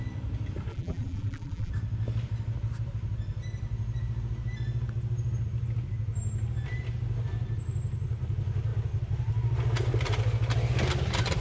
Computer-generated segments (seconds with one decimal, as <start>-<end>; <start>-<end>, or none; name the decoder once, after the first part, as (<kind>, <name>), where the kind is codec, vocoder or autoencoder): 0.7-1.7 (vocoder, BigVGAN v2)